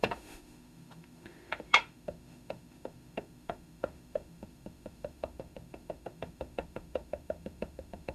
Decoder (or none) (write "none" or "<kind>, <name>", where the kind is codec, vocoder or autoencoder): autoencoder, DAC-VAE